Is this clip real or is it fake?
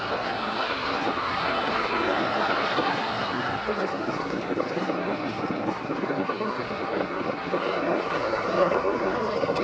fake